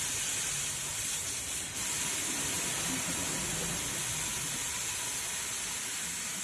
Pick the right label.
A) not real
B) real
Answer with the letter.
B